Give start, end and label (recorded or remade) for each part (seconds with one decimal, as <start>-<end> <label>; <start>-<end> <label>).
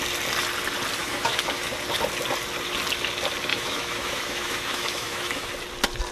0.0-1.0 recorded; 1.0-1.7 remade; 1.7-3.5 recorded; 3.5-5.5 remade; 5.5-6.1 recorded